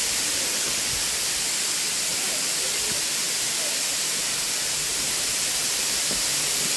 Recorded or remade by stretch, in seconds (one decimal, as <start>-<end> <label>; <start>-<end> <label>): 0.0-2.1 recorded; 2.1-3.0 remade; 3.0-3.9 recorded; 3.9-5.4 remade; 5.4-6.8 recorded